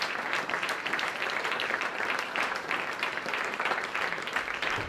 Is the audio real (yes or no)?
no